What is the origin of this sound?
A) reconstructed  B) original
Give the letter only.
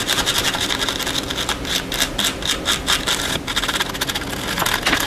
B